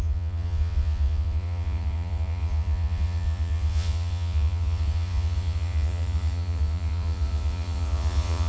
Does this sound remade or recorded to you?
remade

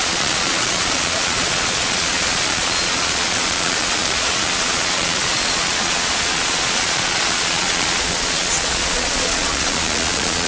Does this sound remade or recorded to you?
remade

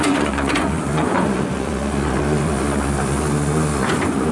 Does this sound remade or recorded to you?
remade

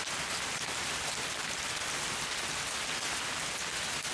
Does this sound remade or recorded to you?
recorded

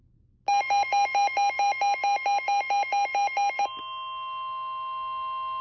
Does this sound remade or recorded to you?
recorded